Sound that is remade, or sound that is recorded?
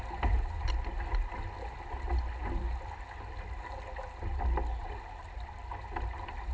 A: recorded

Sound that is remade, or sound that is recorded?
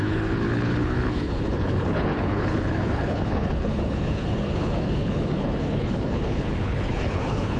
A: remade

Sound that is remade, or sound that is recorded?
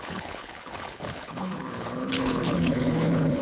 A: remade